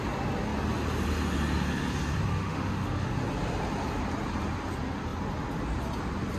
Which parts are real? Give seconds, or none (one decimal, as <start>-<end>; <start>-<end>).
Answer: 0.0-2.3; 3.1-6.4